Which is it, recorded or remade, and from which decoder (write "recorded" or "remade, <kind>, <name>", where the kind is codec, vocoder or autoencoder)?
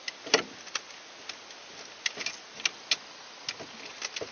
recorded